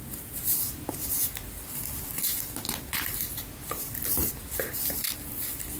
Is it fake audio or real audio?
real